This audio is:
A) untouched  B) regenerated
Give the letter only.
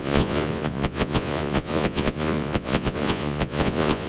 B